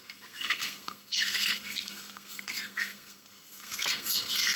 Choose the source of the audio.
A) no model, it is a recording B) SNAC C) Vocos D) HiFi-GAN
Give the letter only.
B